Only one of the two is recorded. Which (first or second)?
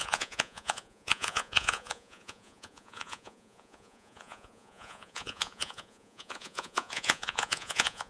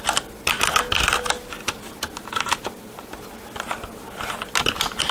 second